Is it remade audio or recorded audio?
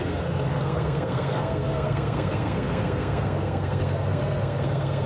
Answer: remade